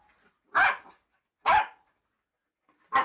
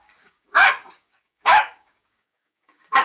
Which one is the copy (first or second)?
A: second